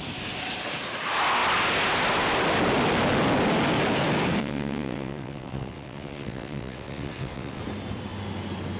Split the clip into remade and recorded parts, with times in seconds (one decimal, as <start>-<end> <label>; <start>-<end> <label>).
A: 0.0-4.4 recorded; 4.4-7.6 remade; 7.6-8.8 recorded